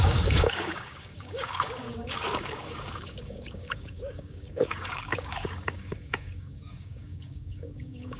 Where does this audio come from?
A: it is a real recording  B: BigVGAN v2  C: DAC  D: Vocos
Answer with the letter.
C